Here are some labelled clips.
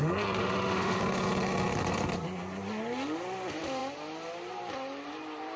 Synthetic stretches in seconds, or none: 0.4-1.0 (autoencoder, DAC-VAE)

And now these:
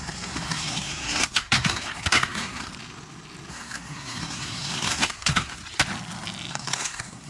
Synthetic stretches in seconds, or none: 0.0-2.7 (codec, SNAC); 3.5-5.6; 6.5-7.3